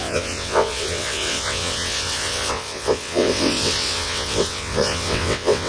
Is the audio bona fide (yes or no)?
no